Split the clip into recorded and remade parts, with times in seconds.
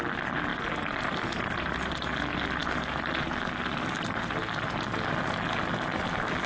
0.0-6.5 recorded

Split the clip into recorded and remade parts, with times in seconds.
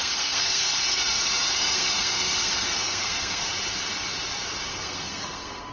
0.0-3.4 remade; 3.4-4.7 recorded; 4.7-5.7 remade